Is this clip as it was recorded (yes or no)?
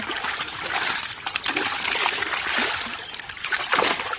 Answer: yes